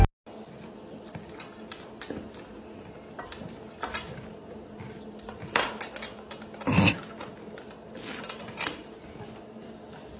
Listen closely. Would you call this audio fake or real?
real